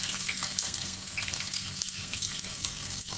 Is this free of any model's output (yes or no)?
no